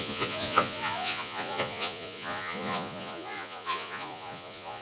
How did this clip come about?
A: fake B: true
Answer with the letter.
A